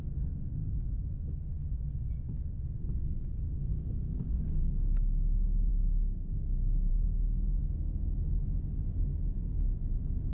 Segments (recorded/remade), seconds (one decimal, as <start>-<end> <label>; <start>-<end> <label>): 0.0-0.6 recorded; 0.6-1.1 remade; 1.1-3.7 recorded; 3.7-4.4 remade; 4.4-10.3 recorded